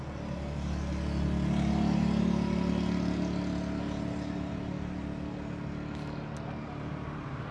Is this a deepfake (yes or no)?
no